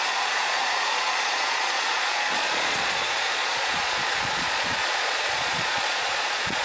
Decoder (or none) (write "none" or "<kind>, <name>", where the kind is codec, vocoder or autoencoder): vocoder, Vocos